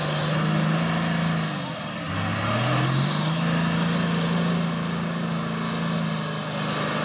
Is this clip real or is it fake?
real